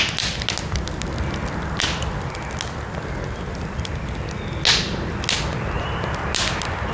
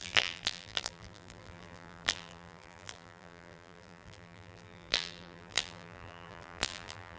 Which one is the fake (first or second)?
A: second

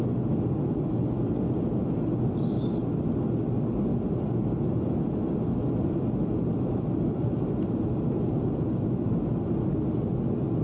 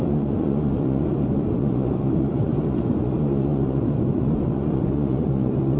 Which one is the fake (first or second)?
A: second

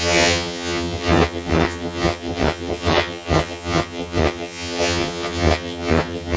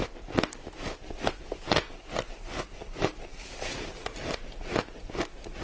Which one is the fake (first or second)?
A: first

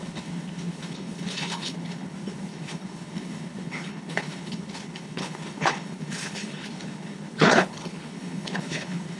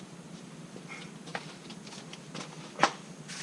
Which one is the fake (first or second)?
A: first